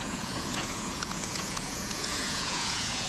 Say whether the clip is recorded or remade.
remade